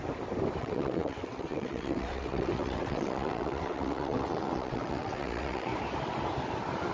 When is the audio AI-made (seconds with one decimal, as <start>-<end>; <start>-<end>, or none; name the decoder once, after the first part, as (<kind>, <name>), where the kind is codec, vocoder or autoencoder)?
0.6-5.7 (vocoder, WaveNeXt)